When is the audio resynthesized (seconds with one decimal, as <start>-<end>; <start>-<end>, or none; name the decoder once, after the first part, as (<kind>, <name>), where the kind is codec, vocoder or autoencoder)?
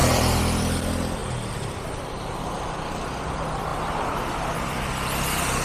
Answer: 0.0-0.6 (vocoder, BigVGAN v2)